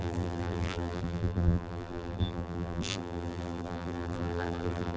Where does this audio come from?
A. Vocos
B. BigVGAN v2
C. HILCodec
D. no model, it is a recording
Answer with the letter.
B